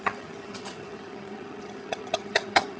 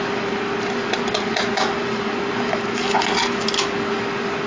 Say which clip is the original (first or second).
second